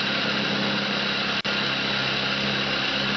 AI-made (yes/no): no